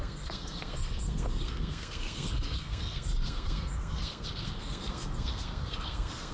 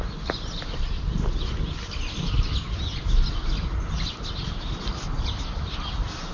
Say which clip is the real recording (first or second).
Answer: second